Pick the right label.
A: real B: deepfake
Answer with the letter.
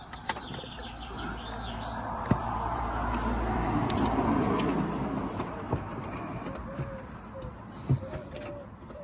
B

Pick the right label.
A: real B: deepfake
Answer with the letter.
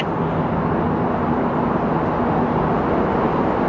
A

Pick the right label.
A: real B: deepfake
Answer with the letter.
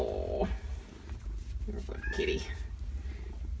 B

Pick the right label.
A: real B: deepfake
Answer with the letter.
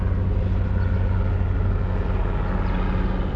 A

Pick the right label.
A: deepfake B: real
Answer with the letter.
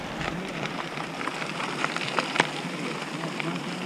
A